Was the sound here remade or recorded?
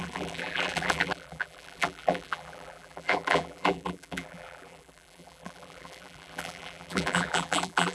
remade